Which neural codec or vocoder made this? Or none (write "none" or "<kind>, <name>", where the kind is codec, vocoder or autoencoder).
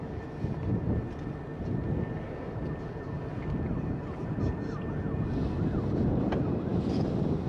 none